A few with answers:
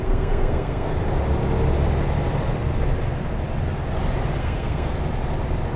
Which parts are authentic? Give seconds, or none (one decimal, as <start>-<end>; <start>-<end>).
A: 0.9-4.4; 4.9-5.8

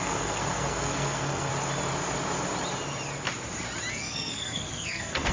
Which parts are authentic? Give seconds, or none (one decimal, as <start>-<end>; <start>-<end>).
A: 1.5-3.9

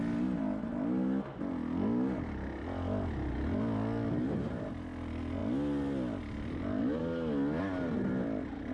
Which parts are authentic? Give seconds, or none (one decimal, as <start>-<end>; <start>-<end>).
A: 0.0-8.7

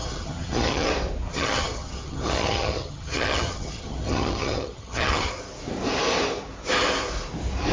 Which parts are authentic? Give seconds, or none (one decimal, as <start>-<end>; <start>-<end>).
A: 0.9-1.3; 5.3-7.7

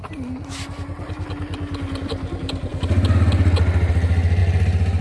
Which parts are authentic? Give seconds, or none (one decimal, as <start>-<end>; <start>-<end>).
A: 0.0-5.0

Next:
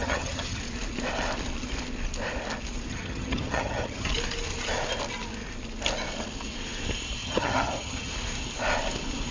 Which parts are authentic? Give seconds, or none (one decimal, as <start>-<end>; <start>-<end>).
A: 0.6-2.9; 4.1-7.2; 8.1-9.3